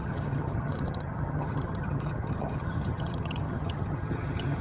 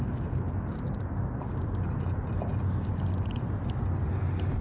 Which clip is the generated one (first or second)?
first